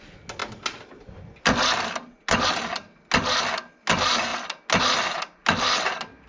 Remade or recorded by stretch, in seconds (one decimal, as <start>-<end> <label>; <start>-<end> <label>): 0.0-6.3 recorded